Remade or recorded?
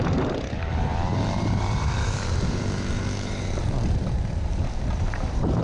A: remade